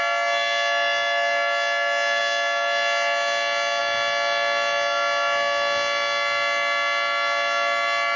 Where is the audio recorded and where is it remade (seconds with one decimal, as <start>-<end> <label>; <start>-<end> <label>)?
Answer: 0.0-8.2 recorded